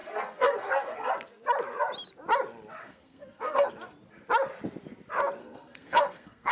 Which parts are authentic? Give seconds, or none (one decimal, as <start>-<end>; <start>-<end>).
1.1-2.8; 3.7-5.4